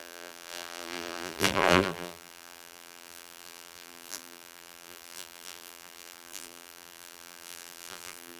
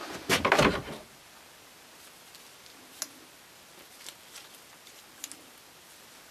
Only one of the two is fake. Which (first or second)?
first